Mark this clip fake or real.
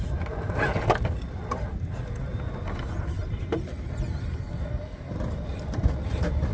real